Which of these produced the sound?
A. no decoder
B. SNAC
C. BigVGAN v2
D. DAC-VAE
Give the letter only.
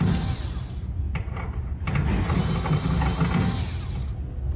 A